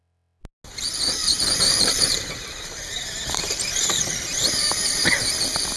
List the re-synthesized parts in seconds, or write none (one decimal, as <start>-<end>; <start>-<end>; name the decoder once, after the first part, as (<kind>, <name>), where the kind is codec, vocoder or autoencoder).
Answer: 1.2-4.7 (vocoder, BigVGAN v2)